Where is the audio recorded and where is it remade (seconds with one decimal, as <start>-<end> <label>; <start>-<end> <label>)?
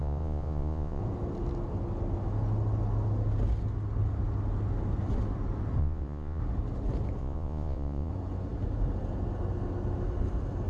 0.0-1.0 remade; 1.0-5.8 recorded; 5.8-6.4 remade; 6.4-7.2 recorded; 7.2-8.1 remade; 8.1-10.7 recorded